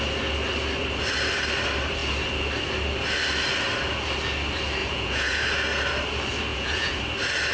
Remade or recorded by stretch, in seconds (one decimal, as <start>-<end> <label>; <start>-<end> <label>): 0.0-4.8 recorded; 4.8-5.4 remade; 5.4-6.5 recorded; 6.5-7.0 remade; 7.0-7.5 recorded